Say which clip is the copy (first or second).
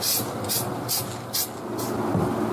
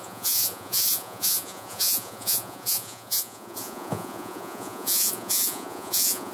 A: second